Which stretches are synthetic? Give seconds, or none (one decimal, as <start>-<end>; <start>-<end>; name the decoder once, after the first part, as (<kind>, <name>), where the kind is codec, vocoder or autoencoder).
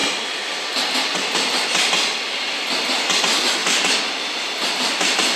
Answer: none